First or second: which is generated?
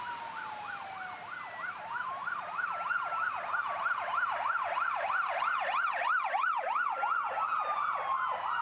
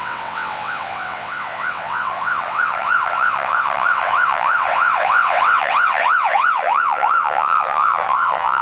second